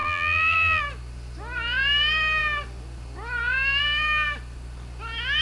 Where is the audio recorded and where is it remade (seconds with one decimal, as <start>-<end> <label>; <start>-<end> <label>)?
0.0-0.8 remade; 0.8-5.4 recorded